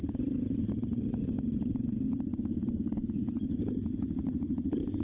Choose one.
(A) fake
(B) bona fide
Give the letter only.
A